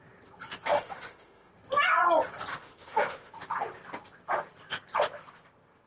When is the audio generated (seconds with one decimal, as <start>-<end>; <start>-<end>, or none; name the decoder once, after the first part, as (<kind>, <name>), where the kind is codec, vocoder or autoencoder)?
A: 0.7-1.5 (autoencoder, DAC-VAE); 2.5-3.3